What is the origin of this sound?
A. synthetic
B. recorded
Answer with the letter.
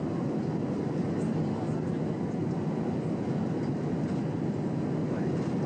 B